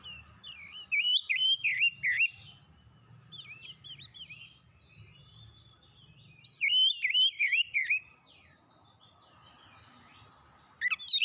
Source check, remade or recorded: recorded